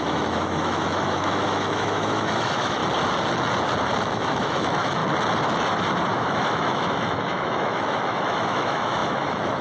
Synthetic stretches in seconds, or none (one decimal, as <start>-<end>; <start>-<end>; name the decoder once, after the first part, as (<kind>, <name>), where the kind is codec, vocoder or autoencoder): 0.0-2.8 (autoencoder, DAC-VAE); 4.0-5.0; 6.1-9.6